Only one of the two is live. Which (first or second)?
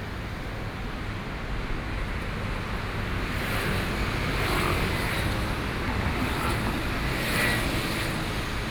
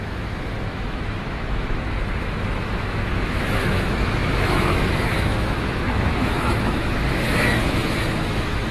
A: first